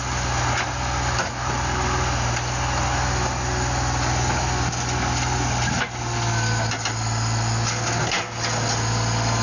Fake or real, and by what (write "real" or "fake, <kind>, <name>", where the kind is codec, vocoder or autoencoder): real